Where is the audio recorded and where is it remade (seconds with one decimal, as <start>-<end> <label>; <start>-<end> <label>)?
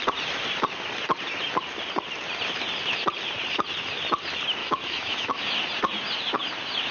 0.0-4.6 recorded; 4.6-5.4 remade; 5.4-6.9 recorded